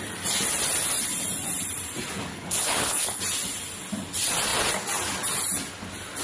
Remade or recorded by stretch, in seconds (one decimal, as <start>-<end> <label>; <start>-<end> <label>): 0.0-2.3 recorded; 2.3-3.2 remade; 3.2-6.2 recorded